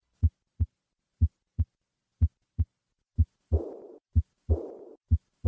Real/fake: real